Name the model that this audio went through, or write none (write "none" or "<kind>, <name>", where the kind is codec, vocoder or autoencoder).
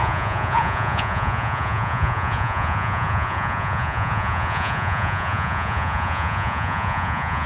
vocoder, Vocos